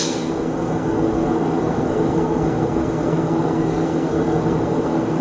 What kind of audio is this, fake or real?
fake